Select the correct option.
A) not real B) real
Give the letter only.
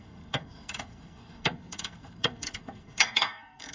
A